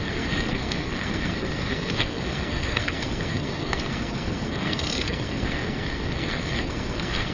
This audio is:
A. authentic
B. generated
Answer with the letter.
B